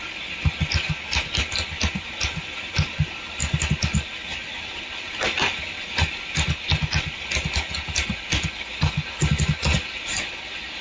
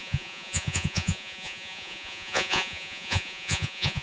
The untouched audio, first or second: first